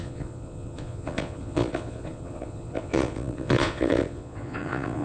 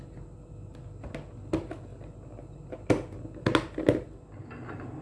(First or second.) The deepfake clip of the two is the first